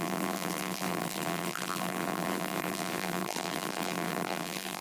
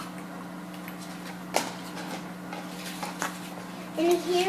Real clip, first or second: second